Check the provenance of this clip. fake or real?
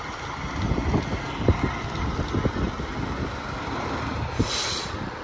real